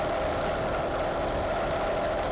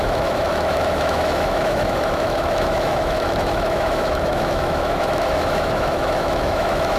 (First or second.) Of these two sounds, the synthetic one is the second